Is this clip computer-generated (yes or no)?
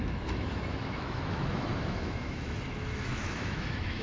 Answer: yes